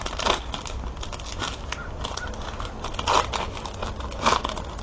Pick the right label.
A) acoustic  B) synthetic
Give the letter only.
A